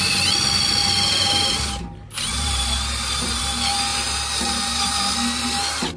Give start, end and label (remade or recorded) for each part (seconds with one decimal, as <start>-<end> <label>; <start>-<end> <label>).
0.0-2.3 recorded; 2.3-3.4 remade; 3.4-6.0 recorded